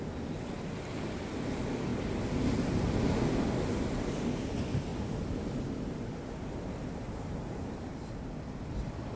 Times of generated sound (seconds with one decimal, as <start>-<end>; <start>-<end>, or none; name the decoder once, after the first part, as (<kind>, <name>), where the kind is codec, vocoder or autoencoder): none